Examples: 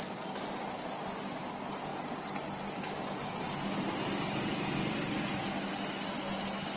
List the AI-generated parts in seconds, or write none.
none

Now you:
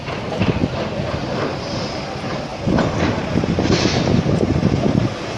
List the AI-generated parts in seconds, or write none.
0.6-1.6 (vocoder, BigVGAN v2); 2.5-5.4